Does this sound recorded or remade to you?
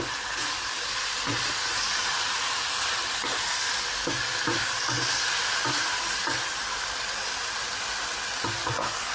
recorded